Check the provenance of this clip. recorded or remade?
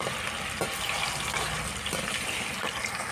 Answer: recorded